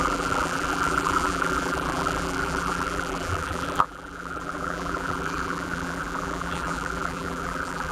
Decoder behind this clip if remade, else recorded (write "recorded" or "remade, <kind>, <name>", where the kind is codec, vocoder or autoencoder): remade, vocoder, BigVGAN v2